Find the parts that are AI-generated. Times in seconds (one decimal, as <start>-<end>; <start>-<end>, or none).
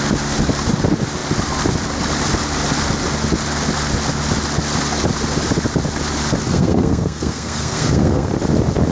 6.5-8.3